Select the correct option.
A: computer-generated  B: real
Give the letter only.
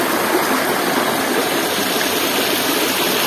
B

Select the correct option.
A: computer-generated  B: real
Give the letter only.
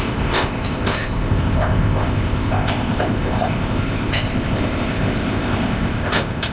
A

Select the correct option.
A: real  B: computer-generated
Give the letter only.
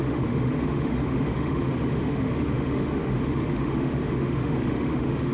B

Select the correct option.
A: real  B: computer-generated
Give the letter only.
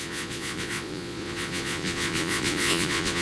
B